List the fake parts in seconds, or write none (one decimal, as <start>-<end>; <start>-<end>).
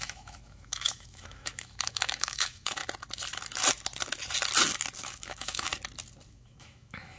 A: 0.0-2.8; 5.0-5.7; 6.3-7.2